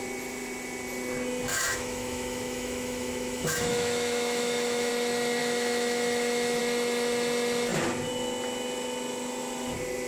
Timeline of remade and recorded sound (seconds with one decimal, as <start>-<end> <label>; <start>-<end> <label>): 0.0-1.5 recorded; 1.5-4.9 remade; 4.9-5.4 recorded; 5.4-6.6 remade; 6.6-10.1 recorded